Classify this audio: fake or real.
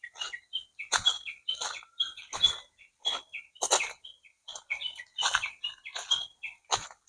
real